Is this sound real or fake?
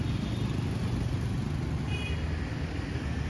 real